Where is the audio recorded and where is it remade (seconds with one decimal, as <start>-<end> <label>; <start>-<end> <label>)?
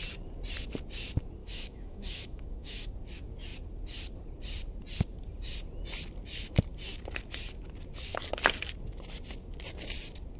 0.0-1.4 recorded; 1.4-2.9 remade; 2.9-10.4 recorded